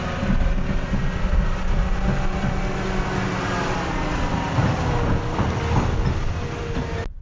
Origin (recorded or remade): recorded